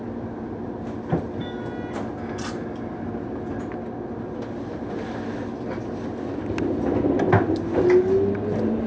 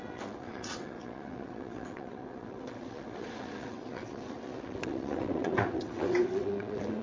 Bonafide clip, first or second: first